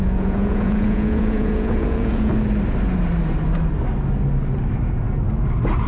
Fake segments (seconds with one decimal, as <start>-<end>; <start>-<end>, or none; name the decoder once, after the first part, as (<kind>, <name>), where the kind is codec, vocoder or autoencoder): 0.0-2.3 (vocoder, Vocos)